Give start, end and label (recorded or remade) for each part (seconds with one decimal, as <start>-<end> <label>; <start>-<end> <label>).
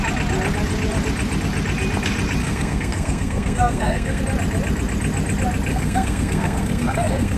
0.0-2.4 recorded; 2.4-4.2 remade; 4.2-5.7 recorded; 5.7-7.4 remade